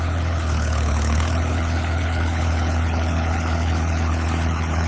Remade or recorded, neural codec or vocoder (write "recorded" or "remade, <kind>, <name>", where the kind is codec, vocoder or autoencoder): remade, codec, HILCodec